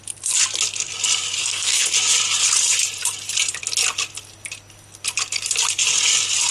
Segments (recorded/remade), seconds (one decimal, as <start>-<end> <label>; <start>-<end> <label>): 0.0-1.4 recorded; 1.4-1.9 remade; 1.9-6.5 recorded